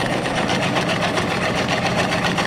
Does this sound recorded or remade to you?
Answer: remade